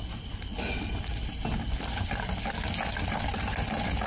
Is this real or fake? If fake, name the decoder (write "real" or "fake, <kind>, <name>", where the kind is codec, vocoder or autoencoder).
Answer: real